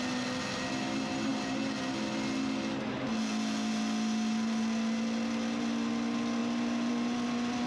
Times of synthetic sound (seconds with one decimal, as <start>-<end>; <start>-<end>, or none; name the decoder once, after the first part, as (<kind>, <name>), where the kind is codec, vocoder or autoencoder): none